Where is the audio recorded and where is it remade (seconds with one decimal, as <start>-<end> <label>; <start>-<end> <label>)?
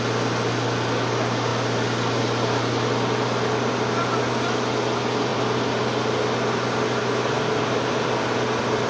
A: 0.0-8.9 recorded